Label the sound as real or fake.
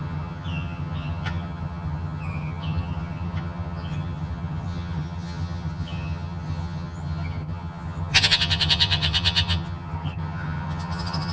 fake